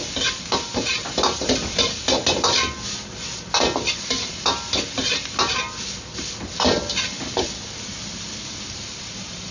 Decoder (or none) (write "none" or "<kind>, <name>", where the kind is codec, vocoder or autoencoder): none